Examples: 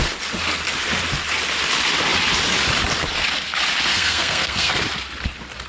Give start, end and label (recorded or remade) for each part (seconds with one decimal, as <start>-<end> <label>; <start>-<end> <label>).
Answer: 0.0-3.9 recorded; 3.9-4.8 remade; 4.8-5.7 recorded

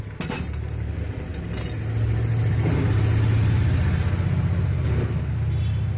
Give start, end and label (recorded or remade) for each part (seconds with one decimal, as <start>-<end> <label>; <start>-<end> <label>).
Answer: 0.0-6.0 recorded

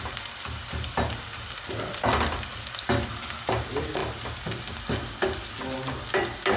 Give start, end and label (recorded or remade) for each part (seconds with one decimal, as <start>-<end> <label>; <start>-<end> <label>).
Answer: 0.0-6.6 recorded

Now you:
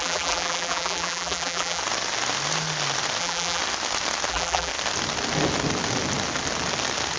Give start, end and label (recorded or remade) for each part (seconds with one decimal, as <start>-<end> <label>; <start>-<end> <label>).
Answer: 0.0-1.8 remade; 1.8-3.2 recorded; 3.2-3.6 remade; 3.6-4.3 recorded; 4.3-4.7 remade; 4.7-7.2 recorded

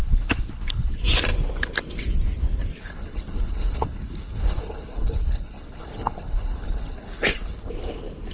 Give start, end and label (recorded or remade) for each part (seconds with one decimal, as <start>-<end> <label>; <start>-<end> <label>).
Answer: 0.0-0.9 remade; 0.9-2.8 recorded; 2.8-7.7 remade; 7.7-8.3 recorded

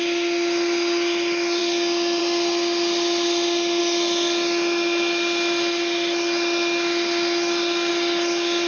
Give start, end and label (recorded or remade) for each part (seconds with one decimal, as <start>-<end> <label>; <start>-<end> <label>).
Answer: 0.0-8.7 recorded

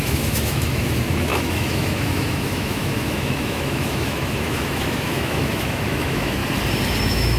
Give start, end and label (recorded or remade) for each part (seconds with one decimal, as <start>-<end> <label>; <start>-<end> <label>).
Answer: 0.0-6.4 remade; 6.4-7.0 recorded; 7.0-7.4 remade

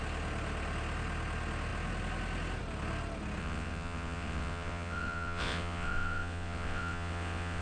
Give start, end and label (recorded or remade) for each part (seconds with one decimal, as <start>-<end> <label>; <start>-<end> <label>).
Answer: 0.0-3.4 recorded; 3.4-7.6 remade